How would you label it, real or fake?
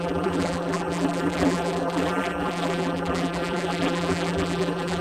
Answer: fake